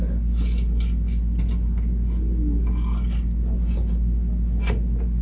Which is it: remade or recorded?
recorded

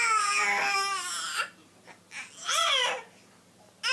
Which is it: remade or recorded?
recorded